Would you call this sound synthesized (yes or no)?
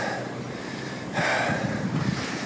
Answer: yes